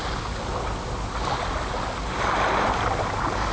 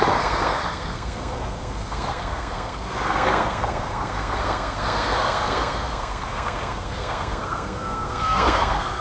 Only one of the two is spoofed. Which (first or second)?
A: second